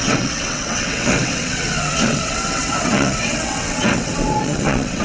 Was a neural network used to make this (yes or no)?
yes